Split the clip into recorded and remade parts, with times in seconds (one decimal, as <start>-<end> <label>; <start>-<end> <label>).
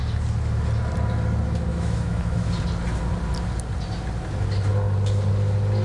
0.0-1.7 recorded; 1.7-2.5 remade; 2.5-5.8 recorded